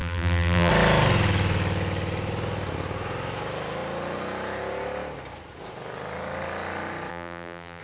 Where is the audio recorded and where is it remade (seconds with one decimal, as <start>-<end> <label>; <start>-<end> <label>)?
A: 0.0-0.7 remade; 0.7-7.1 recorded; 7.1-7.8 remade